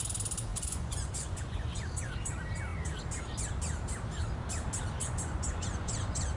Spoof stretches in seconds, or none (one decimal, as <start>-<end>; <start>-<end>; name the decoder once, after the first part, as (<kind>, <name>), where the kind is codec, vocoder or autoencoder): 0.5-2.1 (vocoder, Vocos); 5.0-6.4